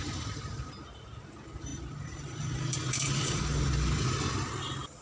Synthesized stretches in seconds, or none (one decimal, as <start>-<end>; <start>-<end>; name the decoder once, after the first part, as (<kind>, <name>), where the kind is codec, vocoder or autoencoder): 0.0-5.0 (vocoder, BigVGAN v2)